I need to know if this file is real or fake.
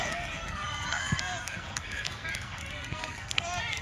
fake